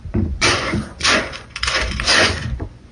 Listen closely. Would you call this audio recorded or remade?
remade